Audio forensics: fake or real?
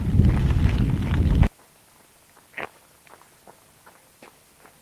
real